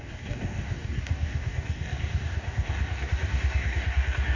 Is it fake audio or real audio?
fake